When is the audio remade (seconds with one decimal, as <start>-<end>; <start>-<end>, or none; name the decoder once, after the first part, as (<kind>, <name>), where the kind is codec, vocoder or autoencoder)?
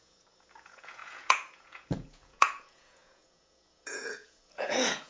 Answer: 0.0-5.1 (vocoder, Vocos)